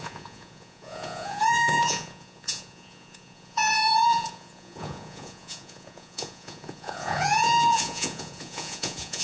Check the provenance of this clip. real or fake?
fake